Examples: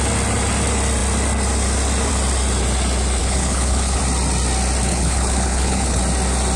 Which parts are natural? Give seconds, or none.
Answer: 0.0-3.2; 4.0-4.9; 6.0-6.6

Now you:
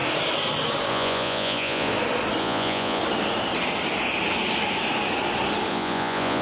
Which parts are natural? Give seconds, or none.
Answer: 0.0-0.9; 1.9-2.4; 3.0-5.7

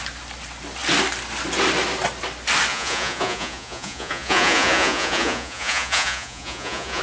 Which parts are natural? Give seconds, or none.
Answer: 0.0-2.7

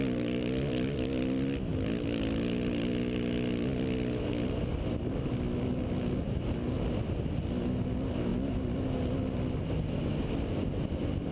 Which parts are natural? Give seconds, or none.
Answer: 0.0-11.3

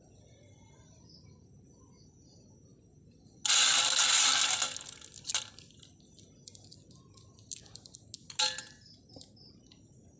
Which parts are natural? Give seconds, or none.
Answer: 0.0-10.2